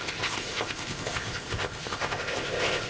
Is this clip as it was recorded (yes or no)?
no